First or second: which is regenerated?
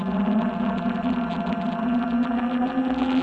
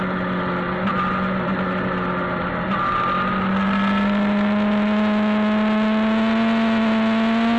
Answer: first